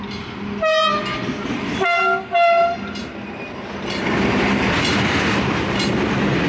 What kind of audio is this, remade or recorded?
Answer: recorded